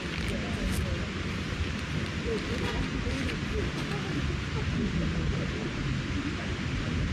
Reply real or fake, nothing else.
real